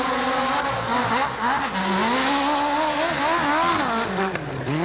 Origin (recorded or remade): recorded